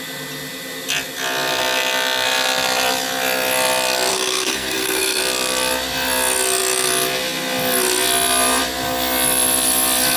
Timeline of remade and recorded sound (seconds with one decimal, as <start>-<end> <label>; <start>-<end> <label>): 0.0-4.1 recorded; 4.1-5.2 remade; 5.2-10.2 recorded